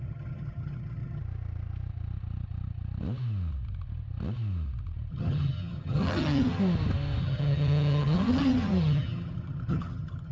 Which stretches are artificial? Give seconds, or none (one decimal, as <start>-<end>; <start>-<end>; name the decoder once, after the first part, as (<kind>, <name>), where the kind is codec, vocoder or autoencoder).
0.0-1.2 (vocoder, HiFi-GAN); 5.1-6.6; 7.2-10.3